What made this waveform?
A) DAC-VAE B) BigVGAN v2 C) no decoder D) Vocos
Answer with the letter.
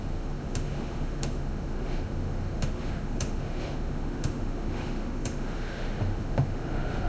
A